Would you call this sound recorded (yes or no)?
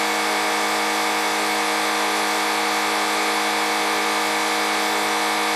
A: yes